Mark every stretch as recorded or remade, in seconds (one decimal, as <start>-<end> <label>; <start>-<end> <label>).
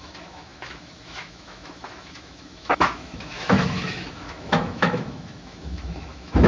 0.0-6.5 remade